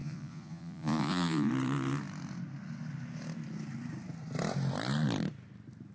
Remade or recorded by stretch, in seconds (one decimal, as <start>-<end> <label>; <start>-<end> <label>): 0.0-1.5 remade; 1.5-5.9 recorded